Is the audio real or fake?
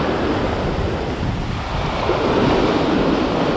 real